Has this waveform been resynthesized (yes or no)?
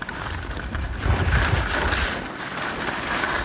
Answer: no